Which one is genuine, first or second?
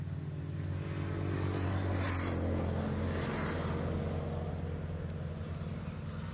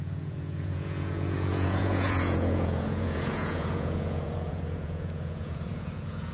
first